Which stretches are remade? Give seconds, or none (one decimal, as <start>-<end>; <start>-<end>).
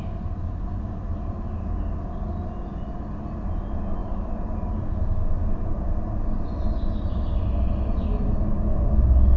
none